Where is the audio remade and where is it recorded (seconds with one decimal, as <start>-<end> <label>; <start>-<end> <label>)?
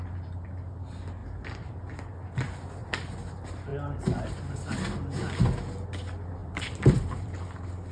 0.0-6.4 recorded; 6.4-7.2 remade; 7.2-7.9 recorded